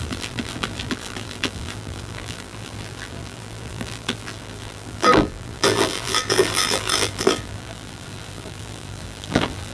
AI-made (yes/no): yes